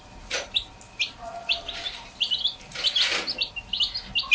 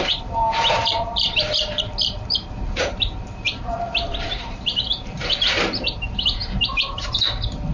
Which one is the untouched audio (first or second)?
first